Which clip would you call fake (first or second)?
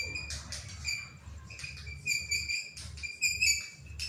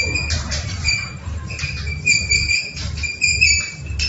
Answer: second